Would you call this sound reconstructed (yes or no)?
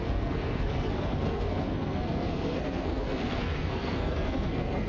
yes